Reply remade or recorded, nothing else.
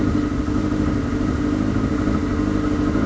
recorded